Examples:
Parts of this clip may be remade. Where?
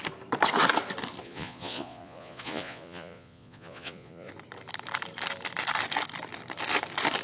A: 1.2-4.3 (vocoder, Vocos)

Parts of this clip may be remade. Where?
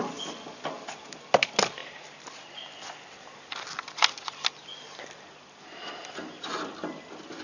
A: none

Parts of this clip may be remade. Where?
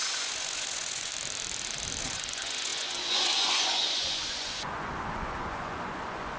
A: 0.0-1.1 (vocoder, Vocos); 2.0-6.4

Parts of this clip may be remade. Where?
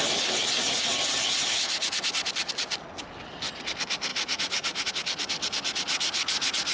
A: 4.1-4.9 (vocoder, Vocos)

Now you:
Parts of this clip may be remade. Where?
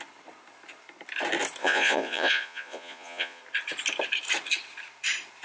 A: 1.6-3.4 (vocoder, Vocos)